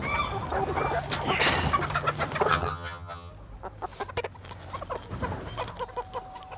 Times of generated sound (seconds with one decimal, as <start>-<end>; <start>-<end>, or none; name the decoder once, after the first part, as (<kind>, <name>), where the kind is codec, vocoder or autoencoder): 2.5-3.3 (vocoder, HiFi-GAN)